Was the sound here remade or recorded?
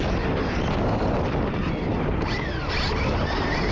recorded